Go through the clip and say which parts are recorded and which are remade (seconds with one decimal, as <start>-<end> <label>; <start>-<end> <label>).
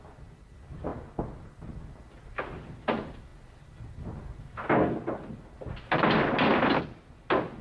0.0-7.6 recorded